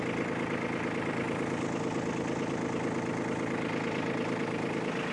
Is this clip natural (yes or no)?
yes